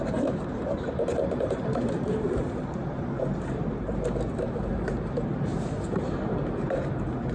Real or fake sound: fake